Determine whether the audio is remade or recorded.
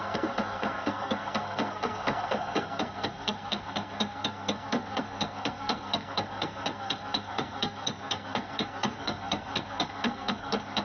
remade